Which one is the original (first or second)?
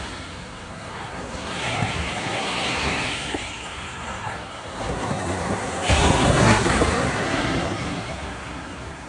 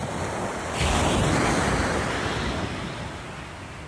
second